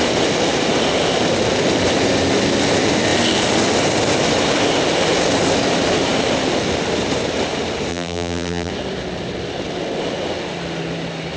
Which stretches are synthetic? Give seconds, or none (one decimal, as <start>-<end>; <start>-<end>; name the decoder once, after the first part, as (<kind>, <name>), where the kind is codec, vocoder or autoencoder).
7.9-8.7 (vocoder, BigVGAN v2)